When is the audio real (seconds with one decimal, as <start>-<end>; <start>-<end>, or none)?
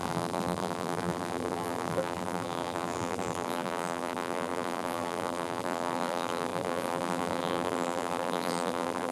none